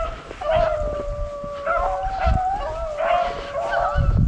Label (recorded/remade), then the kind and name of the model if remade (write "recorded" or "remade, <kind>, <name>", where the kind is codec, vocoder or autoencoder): recorded